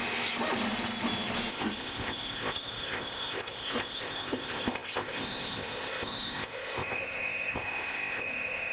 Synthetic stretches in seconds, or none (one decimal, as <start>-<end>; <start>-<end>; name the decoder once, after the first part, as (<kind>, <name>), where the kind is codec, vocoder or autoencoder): 1.5-8.7 (codec, ZipCodec)